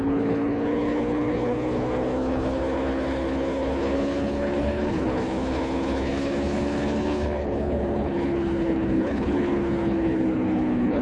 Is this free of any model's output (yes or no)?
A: no